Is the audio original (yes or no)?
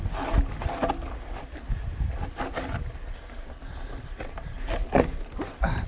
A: yes